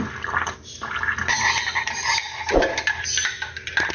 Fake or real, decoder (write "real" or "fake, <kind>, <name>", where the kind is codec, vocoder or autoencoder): real